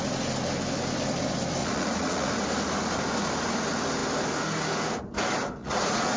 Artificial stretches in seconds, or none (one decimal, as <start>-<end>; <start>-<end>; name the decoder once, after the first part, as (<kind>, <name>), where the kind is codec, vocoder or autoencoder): 1.6-2.3 (vocoder, Vocos); 5.6-6.2